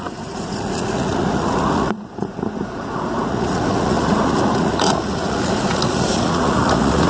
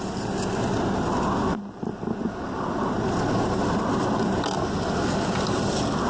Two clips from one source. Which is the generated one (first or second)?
first